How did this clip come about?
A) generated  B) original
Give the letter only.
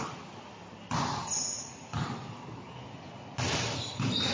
B